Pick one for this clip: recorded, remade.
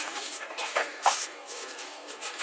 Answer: remade